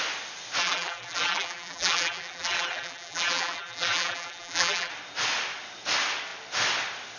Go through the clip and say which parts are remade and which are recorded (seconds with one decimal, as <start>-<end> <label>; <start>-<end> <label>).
0.0-0.6 recorded; 0.6-4.9 remade; 4.9-7.2 recorded